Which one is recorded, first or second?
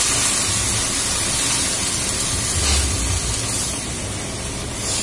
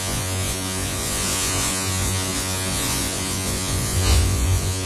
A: first